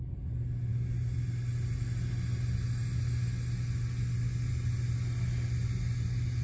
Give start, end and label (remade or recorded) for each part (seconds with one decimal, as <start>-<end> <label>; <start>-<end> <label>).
0.0-6.4 recorded